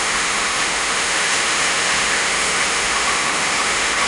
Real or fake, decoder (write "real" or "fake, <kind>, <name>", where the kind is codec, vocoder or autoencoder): fake, autoencoder, DAC-VAE